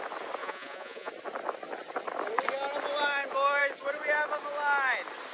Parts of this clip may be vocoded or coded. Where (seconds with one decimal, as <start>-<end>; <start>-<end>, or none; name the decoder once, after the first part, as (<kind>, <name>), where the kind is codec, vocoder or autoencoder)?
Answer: 0.4-1.1 (vocoder, Vocos)